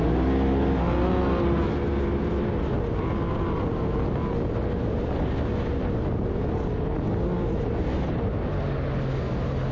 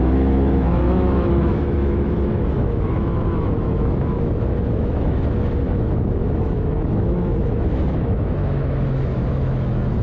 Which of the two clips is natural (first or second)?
first